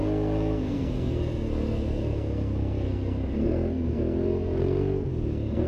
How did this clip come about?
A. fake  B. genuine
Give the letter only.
A